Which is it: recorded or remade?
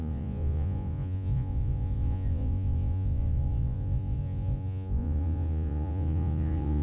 remade